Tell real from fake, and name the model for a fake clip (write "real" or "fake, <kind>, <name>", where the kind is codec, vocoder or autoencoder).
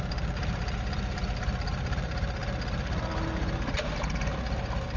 real